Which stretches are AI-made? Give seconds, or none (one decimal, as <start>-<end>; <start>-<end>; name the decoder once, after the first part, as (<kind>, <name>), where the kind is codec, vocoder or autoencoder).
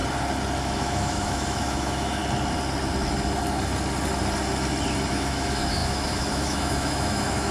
0.6-2.2 (autoencoder, DAC-VAE); 5.1-7.5